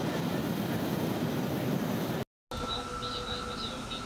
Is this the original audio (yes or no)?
yes